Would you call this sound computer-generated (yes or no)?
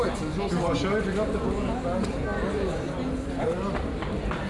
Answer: no